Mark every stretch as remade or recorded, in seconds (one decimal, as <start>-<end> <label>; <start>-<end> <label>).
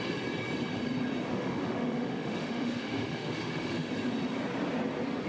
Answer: 0.0-1.3 recorded; 1.3-3.9 remade; 3.9-5.3 recorded